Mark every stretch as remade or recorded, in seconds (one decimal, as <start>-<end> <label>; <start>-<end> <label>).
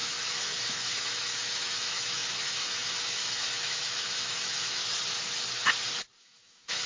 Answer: 0.0-4.8 remade; 4.8-6.2 recorded; 6.2-6.9 remade